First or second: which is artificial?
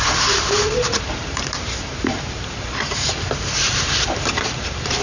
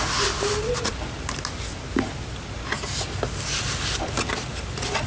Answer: first